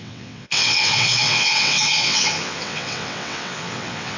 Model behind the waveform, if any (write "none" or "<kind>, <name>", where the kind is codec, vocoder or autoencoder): vocoder, WaveNeXt